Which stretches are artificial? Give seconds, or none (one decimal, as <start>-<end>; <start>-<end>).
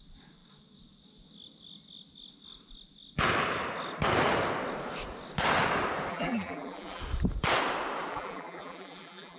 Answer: 6.1-7.0; 8.1-9.4